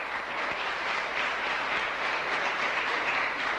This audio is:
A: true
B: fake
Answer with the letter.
B